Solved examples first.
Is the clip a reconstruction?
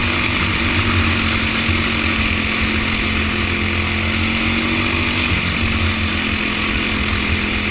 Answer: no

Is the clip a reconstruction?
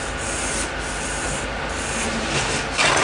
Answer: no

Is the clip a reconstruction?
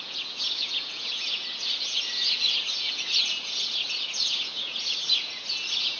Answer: yes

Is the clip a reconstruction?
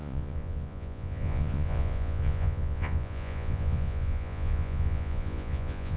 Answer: yes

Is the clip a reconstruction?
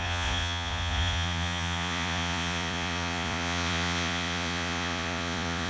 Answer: yes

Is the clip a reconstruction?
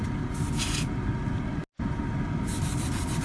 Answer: no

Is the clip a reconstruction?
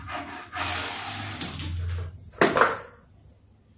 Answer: no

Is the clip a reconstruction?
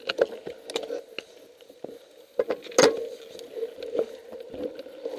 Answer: no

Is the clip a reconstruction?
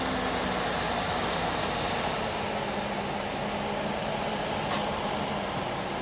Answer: no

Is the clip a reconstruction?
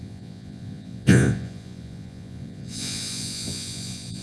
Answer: yes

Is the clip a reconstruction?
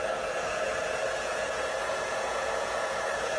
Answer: yes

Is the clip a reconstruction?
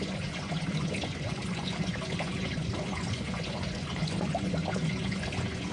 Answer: yes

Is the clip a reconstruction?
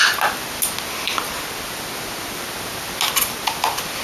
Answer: no